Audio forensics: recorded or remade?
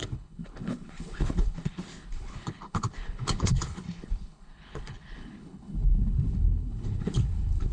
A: remade